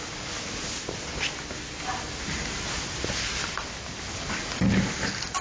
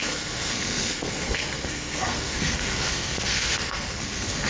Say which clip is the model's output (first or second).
second